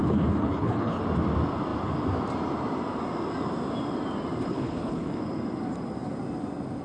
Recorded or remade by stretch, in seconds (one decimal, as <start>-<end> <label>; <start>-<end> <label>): 0.0-1.0 remade; 1.0-4.5 recorded; 4.5-5.2 remade; 5.2-6.8 recorded